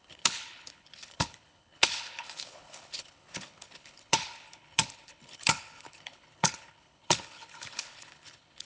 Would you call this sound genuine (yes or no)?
no